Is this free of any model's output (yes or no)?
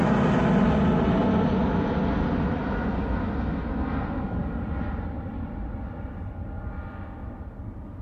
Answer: yes